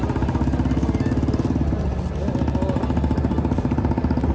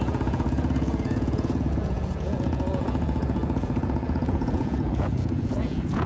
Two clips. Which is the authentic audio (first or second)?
first